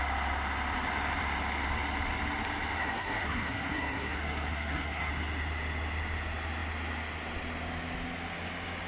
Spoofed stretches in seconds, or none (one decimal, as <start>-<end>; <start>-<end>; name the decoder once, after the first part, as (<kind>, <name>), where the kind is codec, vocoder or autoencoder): 2.8-5.1 (codec, SNAC)